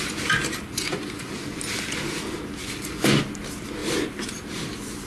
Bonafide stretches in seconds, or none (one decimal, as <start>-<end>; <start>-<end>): 0.0-0.7; 1.3-2.6; 3.2-5.1